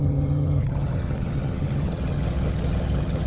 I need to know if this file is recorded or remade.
remade